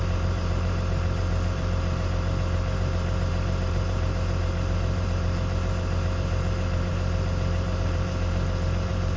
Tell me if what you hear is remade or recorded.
remade